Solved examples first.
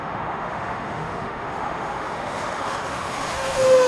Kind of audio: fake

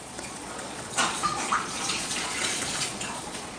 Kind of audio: fake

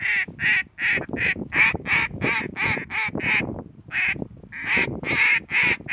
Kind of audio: real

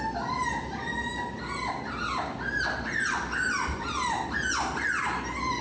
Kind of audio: real